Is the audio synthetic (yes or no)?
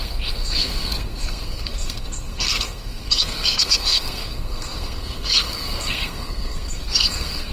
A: yes